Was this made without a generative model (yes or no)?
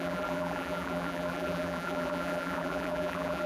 no